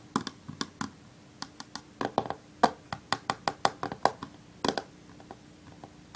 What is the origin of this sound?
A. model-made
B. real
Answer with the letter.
B